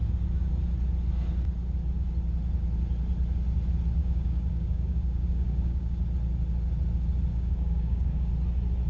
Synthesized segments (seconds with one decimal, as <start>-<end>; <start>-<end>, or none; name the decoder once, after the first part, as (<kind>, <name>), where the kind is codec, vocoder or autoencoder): 4.0-6.0 (codec, DAC); 7.3-8.3